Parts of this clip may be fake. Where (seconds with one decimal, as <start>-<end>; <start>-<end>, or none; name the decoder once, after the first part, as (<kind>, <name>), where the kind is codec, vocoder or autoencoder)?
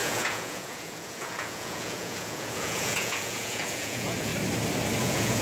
0.0-4.3 (vocoder, Vocos); 5.0-5.4